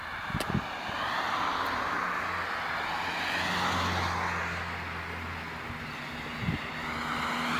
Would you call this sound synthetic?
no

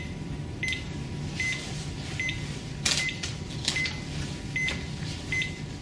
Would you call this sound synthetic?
no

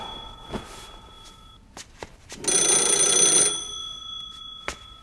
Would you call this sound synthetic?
no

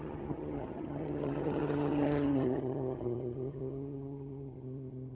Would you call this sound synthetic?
yes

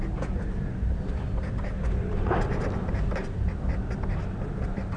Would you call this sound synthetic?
yes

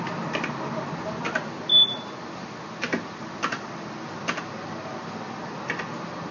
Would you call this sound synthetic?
no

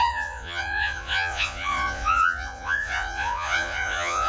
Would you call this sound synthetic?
yes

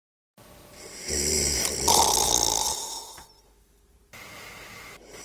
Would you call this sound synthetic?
no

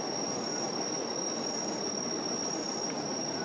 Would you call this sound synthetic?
no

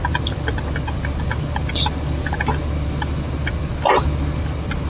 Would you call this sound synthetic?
no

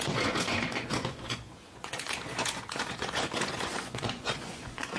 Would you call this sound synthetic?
yes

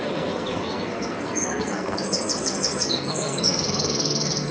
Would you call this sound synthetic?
yes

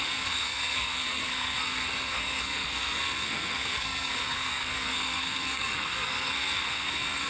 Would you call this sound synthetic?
yes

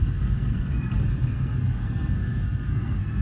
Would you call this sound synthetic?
yes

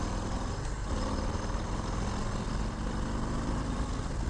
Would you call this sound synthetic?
no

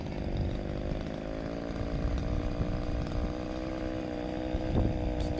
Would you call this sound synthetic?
no